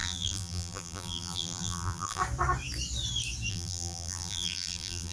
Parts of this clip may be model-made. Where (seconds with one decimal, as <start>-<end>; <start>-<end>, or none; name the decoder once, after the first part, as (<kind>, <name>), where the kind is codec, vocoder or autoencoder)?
0.0-2.2 (vocoder, BigVGAN v2); 3.5-5.1